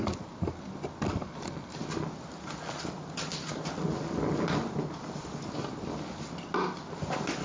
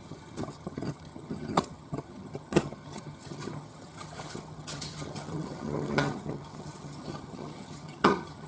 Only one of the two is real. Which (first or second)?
first